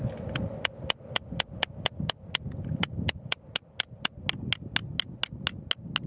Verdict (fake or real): real